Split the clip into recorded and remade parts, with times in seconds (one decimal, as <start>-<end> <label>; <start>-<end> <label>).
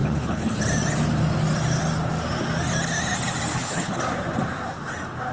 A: 0.0-0.6 remade; 0.6-3.5 recorded; 3.5-4.0 remade; 4.0-5.3 recorded